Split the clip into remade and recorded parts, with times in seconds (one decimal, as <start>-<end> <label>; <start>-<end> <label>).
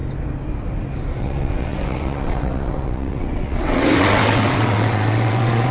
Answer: 0.0-1.2 recorded; 1.2-5.7 remade